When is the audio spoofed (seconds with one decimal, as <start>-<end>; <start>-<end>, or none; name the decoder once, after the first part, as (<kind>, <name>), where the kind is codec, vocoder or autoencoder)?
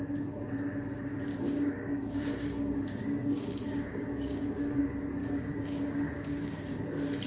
1.3-4.8 (codec, DAC); 5.2-6.8